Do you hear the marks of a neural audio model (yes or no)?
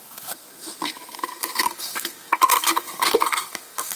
yes